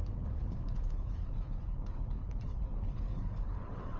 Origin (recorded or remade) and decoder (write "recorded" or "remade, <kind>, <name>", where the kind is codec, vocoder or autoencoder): remade, codec, HILCodec